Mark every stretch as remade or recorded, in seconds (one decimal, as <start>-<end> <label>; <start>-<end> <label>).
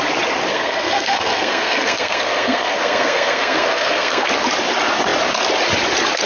0.0-0.5 recorded; 0.5-4.3 remade; 4.3-6.3 recorded